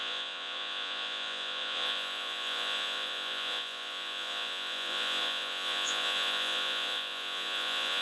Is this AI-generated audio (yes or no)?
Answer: yes